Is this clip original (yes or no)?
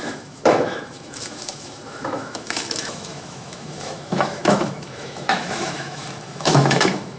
no